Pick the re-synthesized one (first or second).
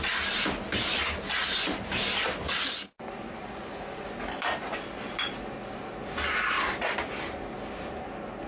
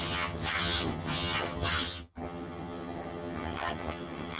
second